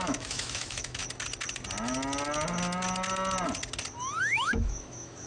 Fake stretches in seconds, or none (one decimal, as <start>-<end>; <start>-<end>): 0.0-1.0; 4.2-5.3